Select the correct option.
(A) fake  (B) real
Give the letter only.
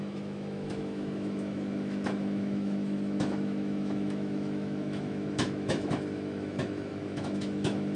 A